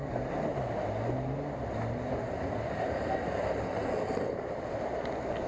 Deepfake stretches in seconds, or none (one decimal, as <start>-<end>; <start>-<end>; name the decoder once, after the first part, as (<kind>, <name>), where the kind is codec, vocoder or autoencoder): none